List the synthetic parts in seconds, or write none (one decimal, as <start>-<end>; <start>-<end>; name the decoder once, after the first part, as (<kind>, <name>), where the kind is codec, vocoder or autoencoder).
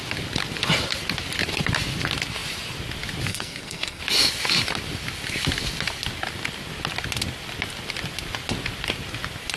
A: 3.3-4.0 (codec, SNAC)